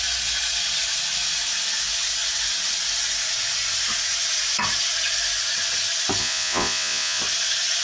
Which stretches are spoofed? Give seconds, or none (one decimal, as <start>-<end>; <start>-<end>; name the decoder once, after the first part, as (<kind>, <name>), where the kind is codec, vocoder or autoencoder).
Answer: 6.2-7.2 (vocoder, Vocos)